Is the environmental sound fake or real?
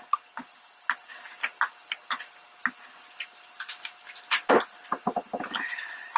real